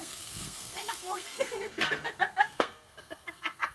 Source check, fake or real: fake